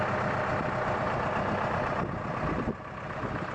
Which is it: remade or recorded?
recorded